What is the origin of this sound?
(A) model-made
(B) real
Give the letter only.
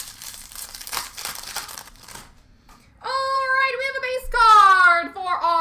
A